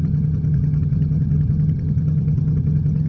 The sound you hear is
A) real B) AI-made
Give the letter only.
B